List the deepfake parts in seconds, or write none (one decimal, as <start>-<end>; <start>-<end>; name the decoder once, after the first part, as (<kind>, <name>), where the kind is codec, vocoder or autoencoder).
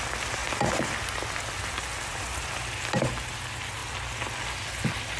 none